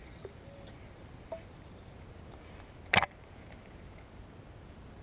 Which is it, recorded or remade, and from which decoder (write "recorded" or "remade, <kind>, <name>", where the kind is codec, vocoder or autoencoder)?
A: recorded